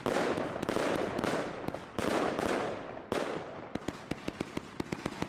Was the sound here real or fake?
real